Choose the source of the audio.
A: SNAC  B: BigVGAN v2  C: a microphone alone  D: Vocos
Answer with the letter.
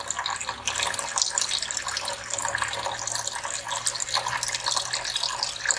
C